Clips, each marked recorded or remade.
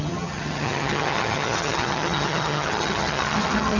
remade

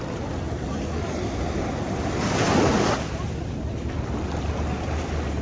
recorded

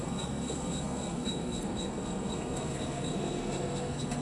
remade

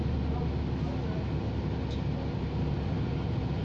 recorded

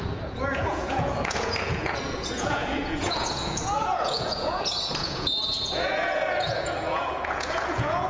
remade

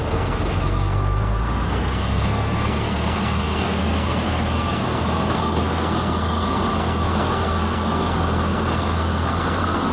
remade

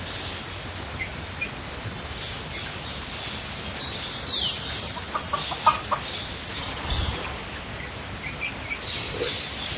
recorded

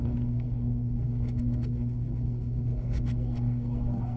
remade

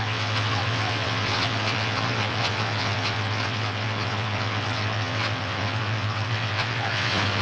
remade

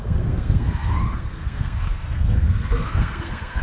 remade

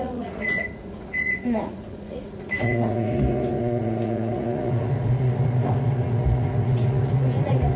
remade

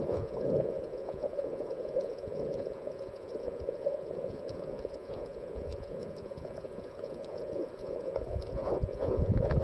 remade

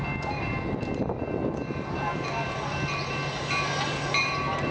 recorded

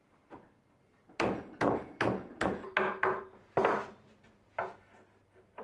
recorded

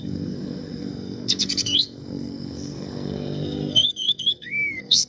remade